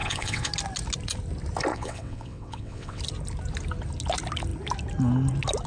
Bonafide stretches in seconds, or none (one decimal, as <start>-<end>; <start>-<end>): 0.5-1.7; 3.0-5.7